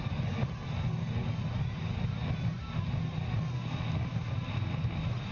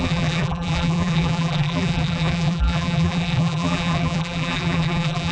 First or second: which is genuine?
first